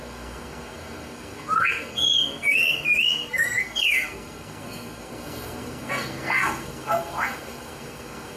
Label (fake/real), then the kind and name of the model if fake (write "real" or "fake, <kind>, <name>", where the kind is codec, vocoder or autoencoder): fake, codec, SNAC